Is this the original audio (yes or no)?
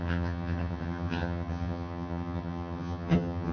no